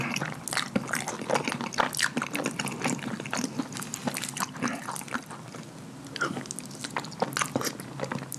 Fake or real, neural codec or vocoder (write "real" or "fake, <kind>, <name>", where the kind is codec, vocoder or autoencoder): real